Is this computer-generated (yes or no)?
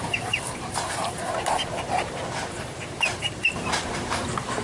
yes